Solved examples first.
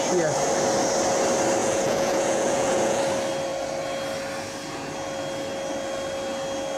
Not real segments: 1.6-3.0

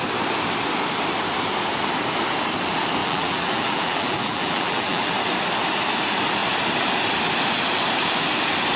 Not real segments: 3.0-5.1

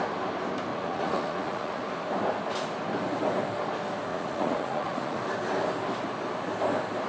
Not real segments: 0.7-1.8; 4.1-5.2

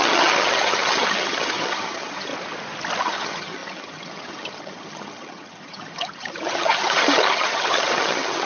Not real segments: 0.0-2.3; 3.0-8.5

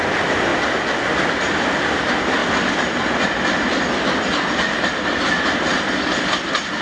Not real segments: 0.0-0.5; 1.1-2.4